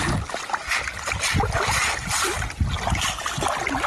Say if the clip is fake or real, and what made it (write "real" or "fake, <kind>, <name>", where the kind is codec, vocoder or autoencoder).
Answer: real